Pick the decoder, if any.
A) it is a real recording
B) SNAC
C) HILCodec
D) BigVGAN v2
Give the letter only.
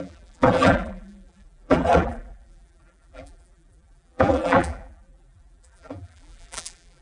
D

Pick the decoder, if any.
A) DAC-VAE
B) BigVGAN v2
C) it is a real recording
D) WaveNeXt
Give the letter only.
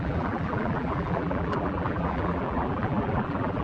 B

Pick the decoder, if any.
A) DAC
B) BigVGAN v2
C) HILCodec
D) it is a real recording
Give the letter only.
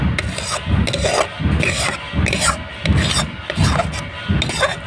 D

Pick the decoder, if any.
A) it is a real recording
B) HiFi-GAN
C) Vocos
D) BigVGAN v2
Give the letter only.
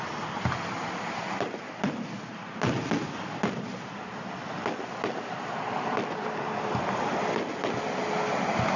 A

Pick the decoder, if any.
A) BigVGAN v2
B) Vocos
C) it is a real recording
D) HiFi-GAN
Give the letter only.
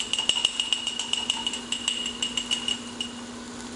C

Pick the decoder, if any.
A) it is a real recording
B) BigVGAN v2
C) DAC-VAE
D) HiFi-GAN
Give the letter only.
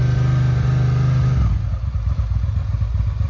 A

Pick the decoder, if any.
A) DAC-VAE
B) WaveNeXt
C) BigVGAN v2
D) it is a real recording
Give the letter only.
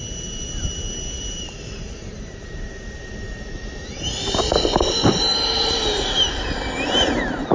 C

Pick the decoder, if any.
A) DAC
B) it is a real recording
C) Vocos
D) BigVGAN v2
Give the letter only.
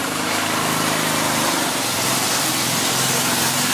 B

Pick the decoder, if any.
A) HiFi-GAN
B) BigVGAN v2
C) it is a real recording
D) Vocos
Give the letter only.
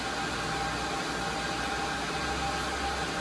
C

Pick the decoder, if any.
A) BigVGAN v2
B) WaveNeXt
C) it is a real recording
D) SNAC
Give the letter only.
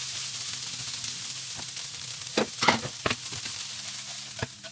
C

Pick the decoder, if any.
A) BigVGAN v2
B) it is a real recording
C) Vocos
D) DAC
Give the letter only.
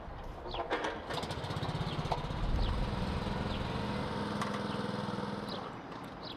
B